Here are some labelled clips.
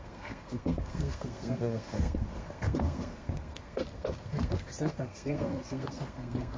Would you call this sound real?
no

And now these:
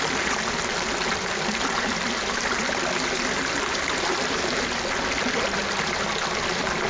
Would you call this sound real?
no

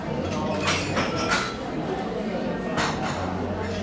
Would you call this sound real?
yes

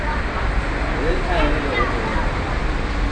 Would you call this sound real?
yes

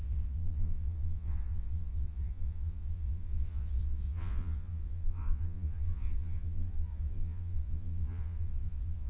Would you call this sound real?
no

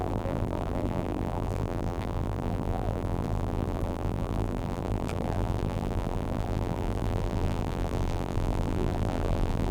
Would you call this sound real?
no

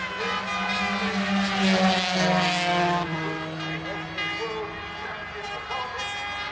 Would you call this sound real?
yes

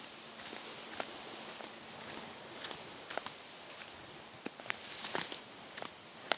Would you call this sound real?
yes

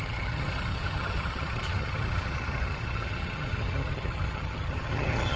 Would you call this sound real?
no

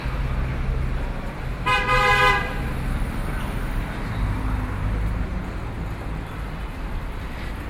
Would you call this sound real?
yes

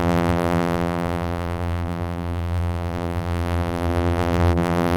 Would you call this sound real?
no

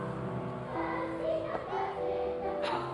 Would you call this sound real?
yes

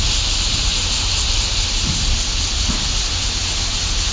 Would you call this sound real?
yes